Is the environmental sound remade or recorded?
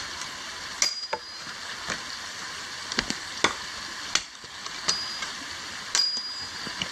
recorded